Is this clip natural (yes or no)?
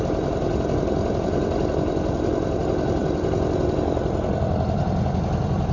yes